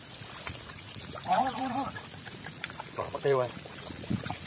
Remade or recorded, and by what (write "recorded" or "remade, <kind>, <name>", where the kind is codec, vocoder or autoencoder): remade, vocoder, Vocos